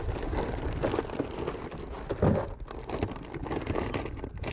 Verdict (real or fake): real